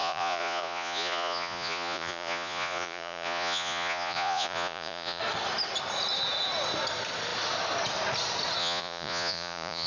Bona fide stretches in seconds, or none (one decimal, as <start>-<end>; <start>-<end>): 5.2-8.6